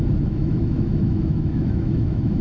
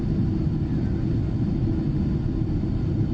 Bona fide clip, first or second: second